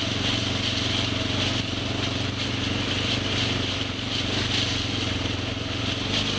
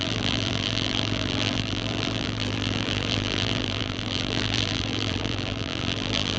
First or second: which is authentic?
first